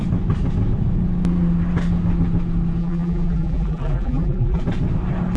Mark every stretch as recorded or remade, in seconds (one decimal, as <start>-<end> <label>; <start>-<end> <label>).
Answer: 0.0-2.8 recorded; 2.8-4.6 remade; 4.6-5.4 recorded